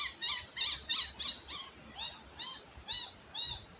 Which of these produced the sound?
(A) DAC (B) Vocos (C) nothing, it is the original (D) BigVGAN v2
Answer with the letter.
C